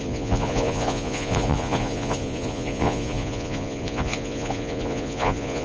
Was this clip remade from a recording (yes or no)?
yes